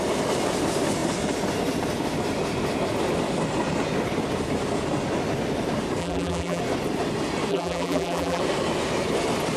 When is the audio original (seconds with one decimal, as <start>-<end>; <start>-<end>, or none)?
0.0-6.0; 6.6-7.5; 8.4-9.6